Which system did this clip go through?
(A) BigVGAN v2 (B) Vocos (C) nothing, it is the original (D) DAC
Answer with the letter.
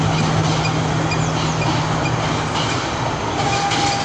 C